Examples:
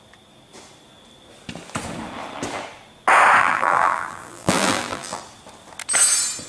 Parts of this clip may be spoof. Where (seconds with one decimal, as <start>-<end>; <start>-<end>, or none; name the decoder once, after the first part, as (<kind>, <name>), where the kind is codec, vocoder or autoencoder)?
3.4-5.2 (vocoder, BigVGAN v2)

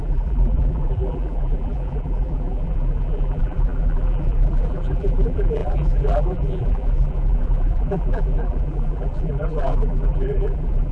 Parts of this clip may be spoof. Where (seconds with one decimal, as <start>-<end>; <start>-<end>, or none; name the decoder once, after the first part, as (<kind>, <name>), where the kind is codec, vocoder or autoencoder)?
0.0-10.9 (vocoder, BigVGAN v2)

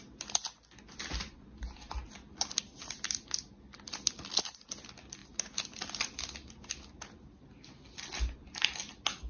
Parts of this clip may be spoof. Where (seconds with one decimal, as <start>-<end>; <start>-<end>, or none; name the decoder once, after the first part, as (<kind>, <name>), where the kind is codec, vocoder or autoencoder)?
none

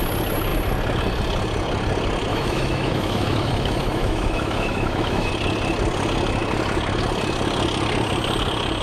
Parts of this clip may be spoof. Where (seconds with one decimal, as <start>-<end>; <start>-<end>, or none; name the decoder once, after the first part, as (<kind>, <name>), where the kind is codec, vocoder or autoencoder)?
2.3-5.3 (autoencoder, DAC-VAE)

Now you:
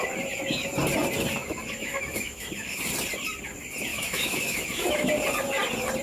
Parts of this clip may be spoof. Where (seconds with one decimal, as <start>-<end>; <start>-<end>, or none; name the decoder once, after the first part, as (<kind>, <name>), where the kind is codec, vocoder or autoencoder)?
1.4-2.8 (autoencoder, DAC-VAE); 3.9-5.1

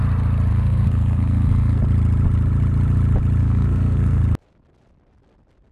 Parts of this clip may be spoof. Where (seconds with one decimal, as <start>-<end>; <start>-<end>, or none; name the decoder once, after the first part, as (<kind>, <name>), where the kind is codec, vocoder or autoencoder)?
0.5-1.8 (codec, SNAC); 3.4-4.2